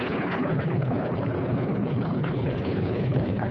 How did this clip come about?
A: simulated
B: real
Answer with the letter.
A